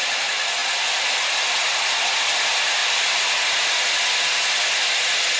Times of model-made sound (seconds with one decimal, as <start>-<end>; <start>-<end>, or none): 0.6-1.2; 2.8-3.3